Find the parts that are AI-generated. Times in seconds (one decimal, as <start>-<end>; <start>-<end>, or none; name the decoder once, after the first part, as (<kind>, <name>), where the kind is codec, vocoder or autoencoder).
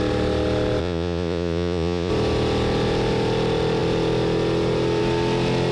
0.8-2.1 (vocoder, Vocos)